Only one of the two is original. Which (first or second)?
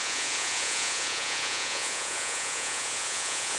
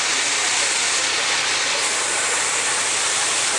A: second